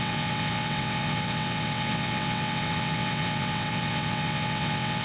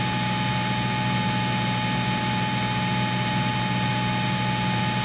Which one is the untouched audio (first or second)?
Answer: second